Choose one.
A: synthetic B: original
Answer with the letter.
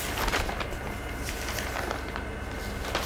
B